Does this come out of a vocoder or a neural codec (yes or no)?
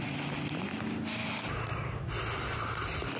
no